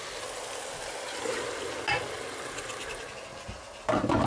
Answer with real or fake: real